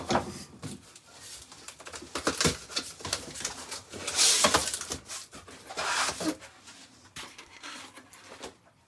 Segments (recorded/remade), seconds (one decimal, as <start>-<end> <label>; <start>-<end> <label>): 0.0-7.3 recorded; 7.3-7.8 remade; 7.8-8.9 recorded